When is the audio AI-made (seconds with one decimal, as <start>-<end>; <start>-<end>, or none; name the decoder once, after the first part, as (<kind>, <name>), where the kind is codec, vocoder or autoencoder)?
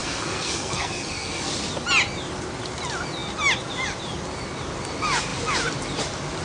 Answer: 0.0-1.5 (codec, SNAC)